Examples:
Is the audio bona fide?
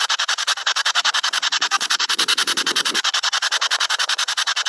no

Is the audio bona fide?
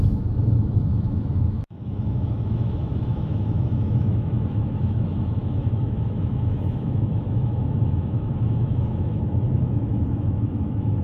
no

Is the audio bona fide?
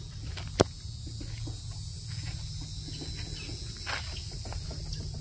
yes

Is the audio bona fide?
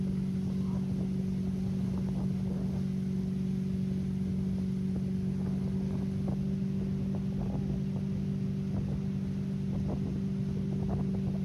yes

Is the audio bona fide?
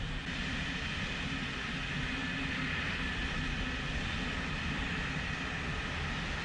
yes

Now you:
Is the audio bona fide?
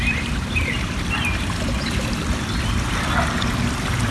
no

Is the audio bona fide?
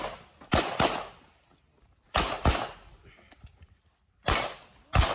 yes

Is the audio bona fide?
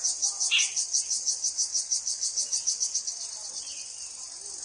yes